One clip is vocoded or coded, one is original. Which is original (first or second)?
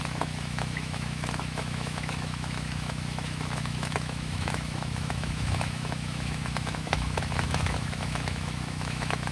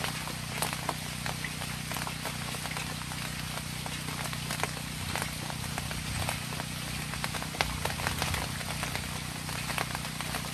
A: second